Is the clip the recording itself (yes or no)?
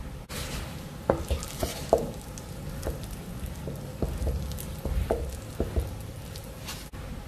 yes